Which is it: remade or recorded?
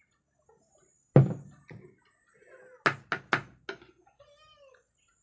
recorded